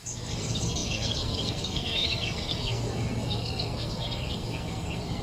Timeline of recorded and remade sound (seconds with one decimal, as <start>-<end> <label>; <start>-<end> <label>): 0.0-5.2 remade